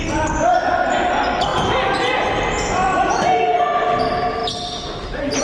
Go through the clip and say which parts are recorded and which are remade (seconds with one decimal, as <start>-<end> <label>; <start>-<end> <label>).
0.0-5.4 recorded